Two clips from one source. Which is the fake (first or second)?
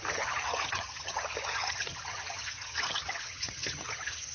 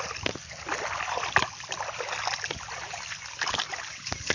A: first